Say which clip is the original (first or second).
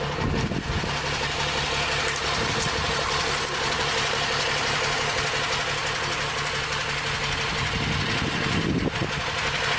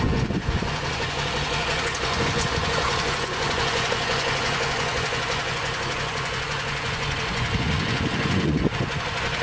first